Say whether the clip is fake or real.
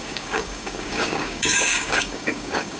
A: fake